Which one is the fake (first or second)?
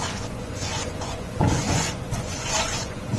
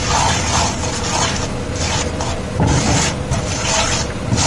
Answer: first